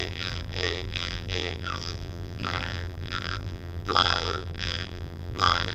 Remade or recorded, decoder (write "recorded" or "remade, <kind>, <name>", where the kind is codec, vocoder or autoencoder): remade, vocoder, BigVGAN v2